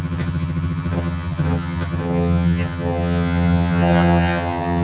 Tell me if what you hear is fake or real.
fake